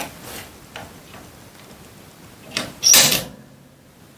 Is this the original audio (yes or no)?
yes